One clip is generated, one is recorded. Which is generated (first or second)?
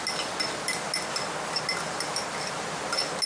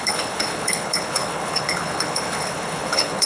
second